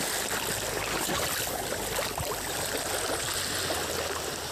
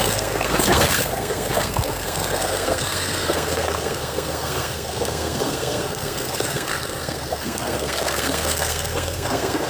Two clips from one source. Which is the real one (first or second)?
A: first